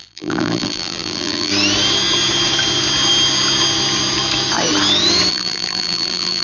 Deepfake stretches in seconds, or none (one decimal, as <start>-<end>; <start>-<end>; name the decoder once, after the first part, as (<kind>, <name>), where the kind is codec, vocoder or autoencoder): 0.0-1.5 (vocoder, BigVGAN v2); 5.3-6.4